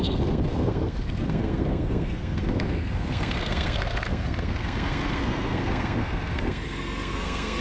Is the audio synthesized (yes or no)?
yes